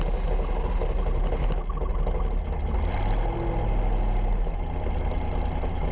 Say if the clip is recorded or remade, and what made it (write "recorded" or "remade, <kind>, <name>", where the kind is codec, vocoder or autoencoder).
recorded